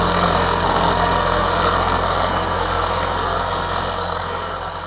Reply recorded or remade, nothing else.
remade